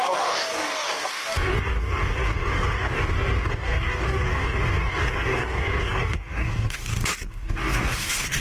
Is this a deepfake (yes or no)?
yes